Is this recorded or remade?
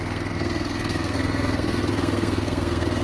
remade